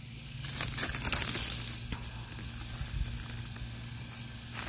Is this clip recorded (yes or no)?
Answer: yes